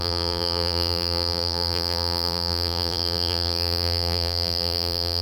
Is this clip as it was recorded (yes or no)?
no